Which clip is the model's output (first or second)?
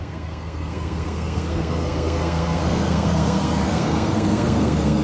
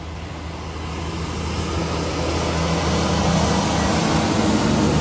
first